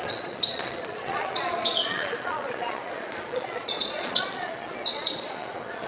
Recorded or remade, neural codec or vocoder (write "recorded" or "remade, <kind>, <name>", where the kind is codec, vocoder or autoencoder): remade, vocoder, Vocos